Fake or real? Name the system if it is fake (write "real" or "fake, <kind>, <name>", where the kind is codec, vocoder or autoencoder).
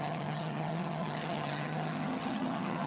fake, vocoder, HiFi-GAN